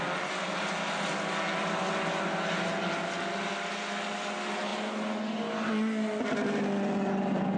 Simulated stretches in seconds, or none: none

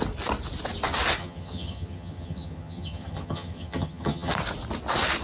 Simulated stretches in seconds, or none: 1.2-4.3 (vocoder, HiFi-GAN)

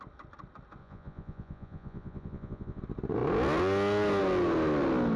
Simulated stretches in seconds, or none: 0.8-2.8 (vocoder, Vocos)